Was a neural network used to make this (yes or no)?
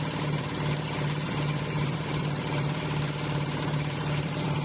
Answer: yes